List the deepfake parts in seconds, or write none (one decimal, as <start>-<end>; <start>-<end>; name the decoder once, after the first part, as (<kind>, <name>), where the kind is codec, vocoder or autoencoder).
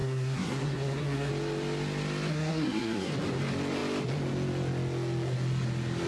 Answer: 0.0-1.3 (codec, SNAC); 2.3-3.1